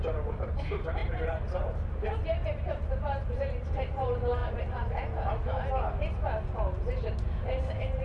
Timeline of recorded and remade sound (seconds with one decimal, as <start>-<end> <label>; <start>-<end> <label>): 0.0-8.0 recorded